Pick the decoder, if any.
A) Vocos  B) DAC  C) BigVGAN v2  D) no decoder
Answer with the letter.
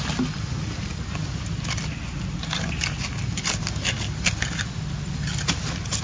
D